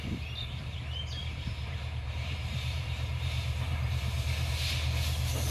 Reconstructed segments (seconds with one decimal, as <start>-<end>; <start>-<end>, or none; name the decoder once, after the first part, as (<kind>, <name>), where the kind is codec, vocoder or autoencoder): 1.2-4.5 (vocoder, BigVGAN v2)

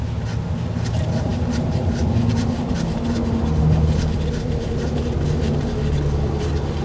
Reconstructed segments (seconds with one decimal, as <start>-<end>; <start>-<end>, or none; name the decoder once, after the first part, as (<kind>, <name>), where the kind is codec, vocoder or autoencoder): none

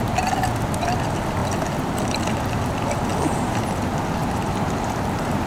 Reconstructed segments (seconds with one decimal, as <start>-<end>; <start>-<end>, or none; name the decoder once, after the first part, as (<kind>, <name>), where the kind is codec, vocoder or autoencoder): 3.1-3.6 (vocoder, BigVGAN v2); 4.2-5.5

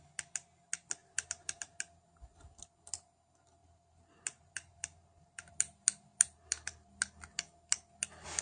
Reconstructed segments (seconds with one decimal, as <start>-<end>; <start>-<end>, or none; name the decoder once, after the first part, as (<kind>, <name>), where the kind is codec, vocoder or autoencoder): 1.0-1.8 (vocoder, BigVGAN v2); 3.6-5.5; 6.1-6.9

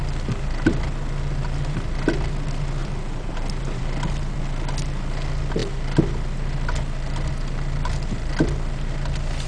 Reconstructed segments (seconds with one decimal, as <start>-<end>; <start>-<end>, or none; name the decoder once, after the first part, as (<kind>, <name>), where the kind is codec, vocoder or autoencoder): 2.8-4.4 (vocoder, BigVGAN v2)

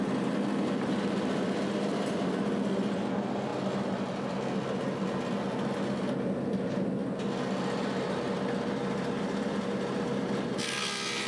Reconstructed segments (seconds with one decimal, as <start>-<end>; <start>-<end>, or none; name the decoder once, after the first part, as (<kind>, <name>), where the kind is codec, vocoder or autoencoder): none

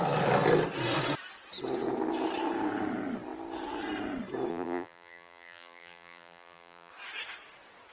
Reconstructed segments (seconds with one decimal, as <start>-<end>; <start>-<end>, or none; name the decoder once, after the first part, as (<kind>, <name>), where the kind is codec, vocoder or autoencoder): 4.5-6.9 (vocoder, BigVGAN v2)